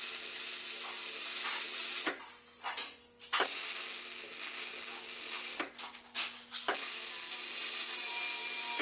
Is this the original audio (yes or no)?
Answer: yes